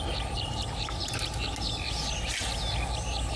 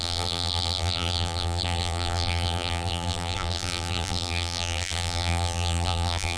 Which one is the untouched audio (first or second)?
first